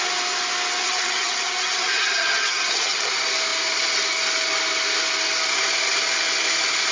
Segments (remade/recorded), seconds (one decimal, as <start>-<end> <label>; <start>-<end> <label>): 0.0-0.8 recorded; 0.8-3.1 remade; 3.1-6.9 recorded